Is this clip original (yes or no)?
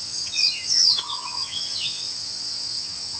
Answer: no